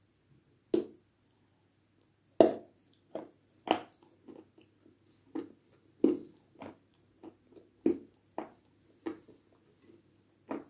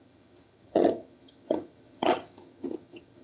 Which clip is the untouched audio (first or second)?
first